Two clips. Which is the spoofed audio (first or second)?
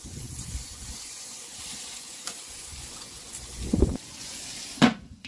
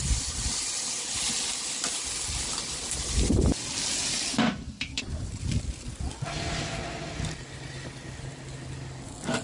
first